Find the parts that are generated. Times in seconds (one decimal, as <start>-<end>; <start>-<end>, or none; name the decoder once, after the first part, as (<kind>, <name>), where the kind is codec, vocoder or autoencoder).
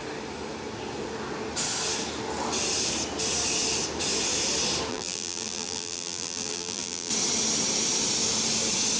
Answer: 4.9-7.1 (vocoder, BigVGAN v2)